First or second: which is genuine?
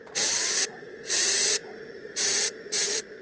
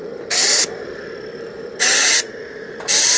second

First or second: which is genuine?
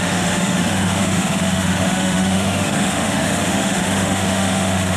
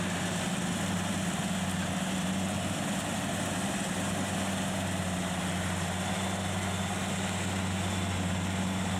second